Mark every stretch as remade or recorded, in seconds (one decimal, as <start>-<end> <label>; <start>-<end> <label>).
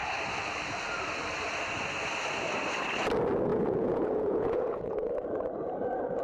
0.0-3.5 recorded; 3.5-5.1 remade; 5.1-6.2 recorded